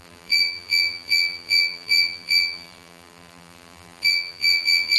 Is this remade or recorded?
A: remade